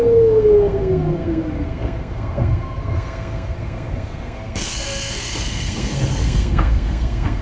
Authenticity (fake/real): fake